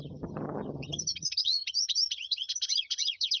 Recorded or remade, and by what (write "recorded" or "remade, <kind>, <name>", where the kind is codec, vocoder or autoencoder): remade, vocoder, HiFi-GAN